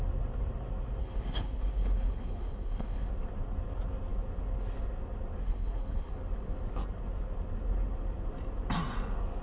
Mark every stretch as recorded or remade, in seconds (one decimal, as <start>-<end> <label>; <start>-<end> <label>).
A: 0.0-1.0 recorded; 1.0-3.1 remade; 3.1-5.4 recorded; 5.4-6.1 remade; 6.1-9.4 recorded